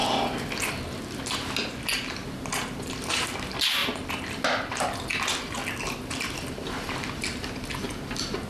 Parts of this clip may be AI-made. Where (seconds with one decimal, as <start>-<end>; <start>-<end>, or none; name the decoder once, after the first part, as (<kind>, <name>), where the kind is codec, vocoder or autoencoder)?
none